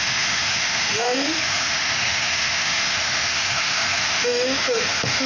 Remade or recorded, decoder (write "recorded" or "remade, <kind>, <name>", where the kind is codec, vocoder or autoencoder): remade, autoencoder, DAC-VAE